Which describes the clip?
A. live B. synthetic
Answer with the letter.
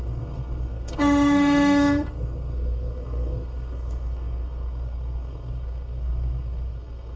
B